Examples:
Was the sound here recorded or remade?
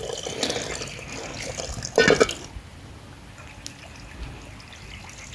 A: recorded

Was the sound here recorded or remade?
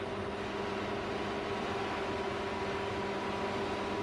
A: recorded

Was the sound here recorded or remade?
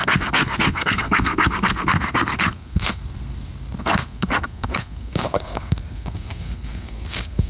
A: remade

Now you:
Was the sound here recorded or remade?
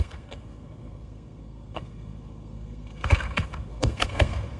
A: remade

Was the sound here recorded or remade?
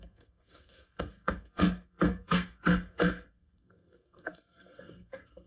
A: remade